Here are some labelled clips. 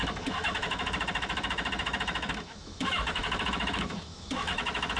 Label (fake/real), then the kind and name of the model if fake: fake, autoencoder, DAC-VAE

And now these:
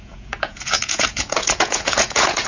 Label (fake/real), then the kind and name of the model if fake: fake, vocoder, Vocos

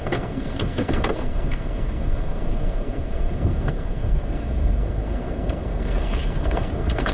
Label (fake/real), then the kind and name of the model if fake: fake, codec, SNAC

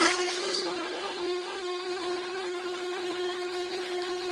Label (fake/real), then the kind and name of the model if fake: fake, codec, SNAC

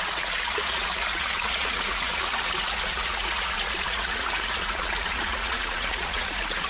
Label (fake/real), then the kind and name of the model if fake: fake, vocoder, Vocos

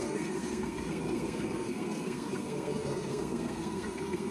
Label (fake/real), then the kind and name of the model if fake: fake, codec, SNAC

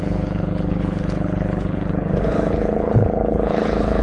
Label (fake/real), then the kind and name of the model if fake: fake, codec, HILCodec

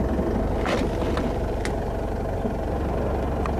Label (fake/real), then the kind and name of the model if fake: real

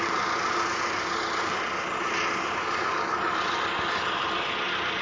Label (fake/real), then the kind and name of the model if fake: real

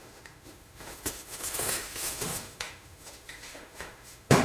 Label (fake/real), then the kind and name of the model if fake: fake, autoencoder, DAC-VAE